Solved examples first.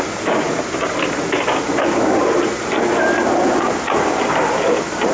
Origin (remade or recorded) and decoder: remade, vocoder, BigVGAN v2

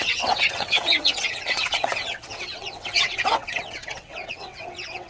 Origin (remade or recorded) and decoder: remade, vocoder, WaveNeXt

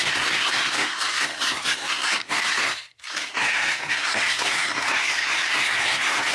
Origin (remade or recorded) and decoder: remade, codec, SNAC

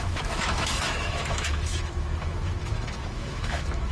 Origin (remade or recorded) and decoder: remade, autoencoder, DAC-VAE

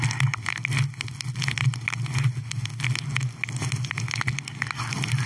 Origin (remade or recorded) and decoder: recorded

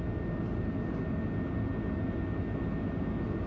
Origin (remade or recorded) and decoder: recorded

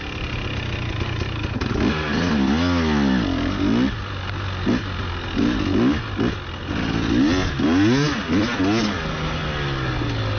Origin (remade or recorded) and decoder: recorded